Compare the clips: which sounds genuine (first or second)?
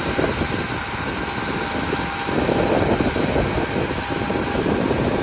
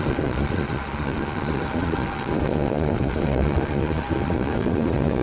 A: first